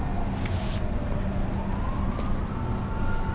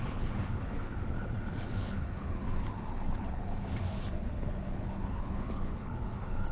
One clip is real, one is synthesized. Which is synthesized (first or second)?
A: second